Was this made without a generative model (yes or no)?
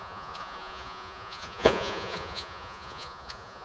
no